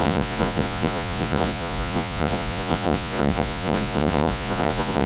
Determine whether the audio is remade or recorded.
remade